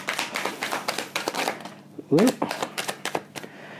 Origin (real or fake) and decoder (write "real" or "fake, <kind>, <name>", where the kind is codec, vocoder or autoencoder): fake, vocoder, BigVGAN v2